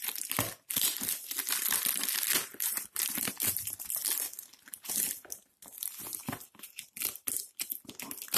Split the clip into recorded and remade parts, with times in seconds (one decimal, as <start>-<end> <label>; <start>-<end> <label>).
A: 0.0-8.4 recorded